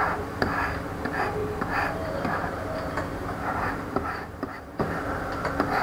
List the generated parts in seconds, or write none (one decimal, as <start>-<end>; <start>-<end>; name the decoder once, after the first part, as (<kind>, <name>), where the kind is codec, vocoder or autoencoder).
1.4-4.9 (vocoder, BigVGAN v2)

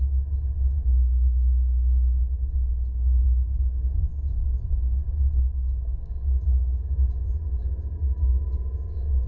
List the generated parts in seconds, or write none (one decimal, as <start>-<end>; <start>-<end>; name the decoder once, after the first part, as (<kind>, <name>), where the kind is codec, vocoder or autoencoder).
4.1-5.0 (codec, DAC); 5.9-7.0; 7.6-8.4

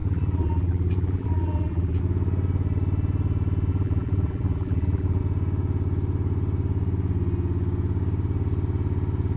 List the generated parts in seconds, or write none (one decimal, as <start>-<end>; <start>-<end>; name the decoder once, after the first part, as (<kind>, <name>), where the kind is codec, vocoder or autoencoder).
0.0-2.0 (vocoder, BigVGAN v2); 3.7-5.2

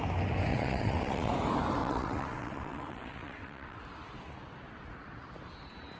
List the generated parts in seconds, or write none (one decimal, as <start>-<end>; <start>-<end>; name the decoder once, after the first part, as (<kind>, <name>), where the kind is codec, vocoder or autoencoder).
0.5-1.3 (vocoder, WaveNeXt); 1.8-3.8

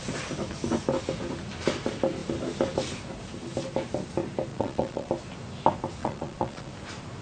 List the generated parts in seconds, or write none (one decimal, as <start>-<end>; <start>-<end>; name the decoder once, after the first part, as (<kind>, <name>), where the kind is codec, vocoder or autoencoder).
4.5-5.1 (vocoder, Vocos); 6.0-6.7